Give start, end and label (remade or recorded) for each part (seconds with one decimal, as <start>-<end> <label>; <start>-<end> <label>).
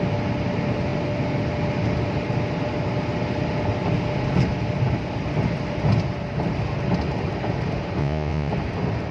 0.0-8.0 recorded; 8.0-8.5 remade; 8.5-9.1 recorded